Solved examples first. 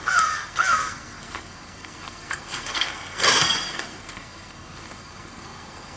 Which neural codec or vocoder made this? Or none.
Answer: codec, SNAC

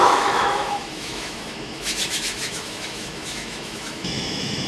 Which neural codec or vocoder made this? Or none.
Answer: autoencoder, DAC-VAE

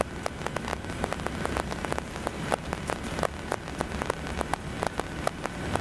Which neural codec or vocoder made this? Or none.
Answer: none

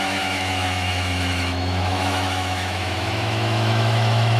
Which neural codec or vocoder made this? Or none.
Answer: autoencoder, DAC-VAE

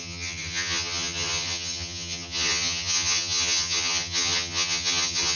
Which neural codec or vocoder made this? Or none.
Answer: vocoder, HiFi-GAN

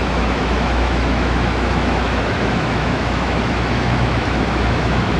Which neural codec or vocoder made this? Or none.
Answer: autoencoder, DAC-VAE